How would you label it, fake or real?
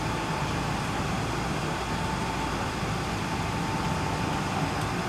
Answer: real